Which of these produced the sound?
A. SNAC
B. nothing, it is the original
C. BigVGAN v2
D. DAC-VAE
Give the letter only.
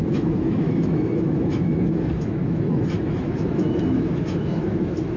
D